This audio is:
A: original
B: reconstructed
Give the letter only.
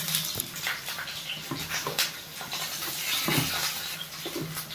A